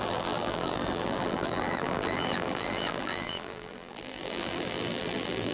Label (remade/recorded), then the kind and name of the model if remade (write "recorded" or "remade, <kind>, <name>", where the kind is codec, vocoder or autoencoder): remade, vocoder, BigVGAN v2